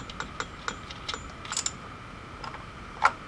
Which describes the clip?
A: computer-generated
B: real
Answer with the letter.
B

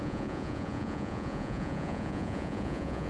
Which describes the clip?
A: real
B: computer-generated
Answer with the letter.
B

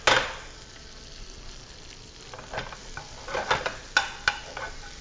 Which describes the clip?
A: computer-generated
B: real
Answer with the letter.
B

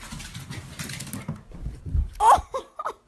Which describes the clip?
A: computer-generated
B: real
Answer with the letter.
B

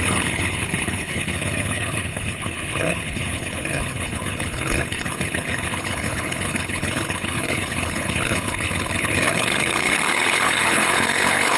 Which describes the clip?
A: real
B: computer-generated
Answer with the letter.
B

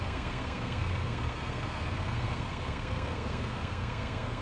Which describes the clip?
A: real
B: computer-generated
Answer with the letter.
B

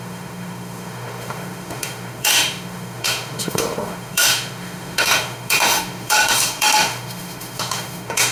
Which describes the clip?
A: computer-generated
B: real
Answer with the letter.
A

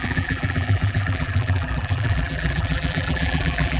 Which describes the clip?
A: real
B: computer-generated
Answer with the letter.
B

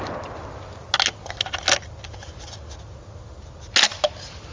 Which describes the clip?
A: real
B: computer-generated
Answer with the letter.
A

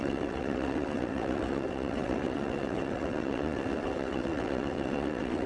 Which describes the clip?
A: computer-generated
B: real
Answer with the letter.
A